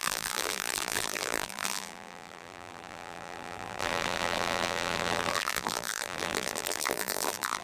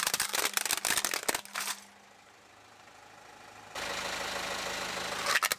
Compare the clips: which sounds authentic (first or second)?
second